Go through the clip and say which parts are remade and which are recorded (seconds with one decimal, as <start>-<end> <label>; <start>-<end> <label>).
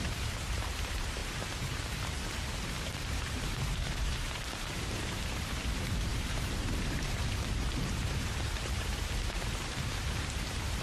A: 0.0-10.8 remade